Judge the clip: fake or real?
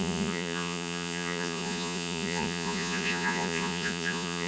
fake